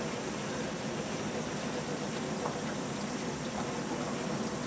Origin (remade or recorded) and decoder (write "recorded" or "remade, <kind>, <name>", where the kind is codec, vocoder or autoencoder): recorded